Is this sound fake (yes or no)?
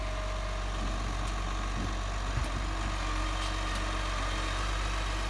no